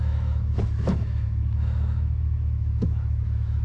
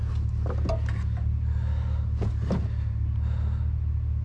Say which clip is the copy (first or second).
first